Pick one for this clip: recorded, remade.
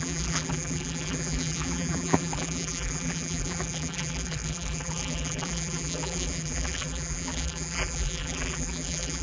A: remade